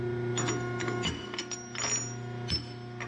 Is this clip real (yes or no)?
yes